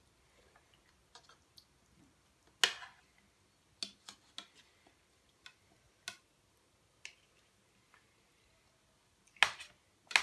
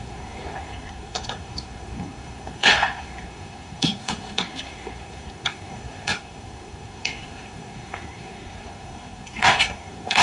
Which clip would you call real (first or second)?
first